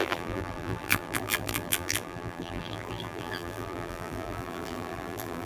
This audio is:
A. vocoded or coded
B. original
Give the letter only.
A